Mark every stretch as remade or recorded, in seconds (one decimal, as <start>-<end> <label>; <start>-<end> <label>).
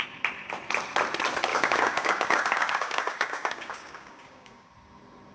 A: 0.0-1.5 recorded; 1.5-4.7 remade; 4.7-5.3 recorded